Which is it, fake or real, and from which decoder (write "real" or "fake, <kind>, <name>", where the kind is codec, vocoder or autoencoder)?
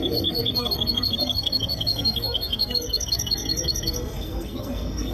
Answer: fake, codec, SNAC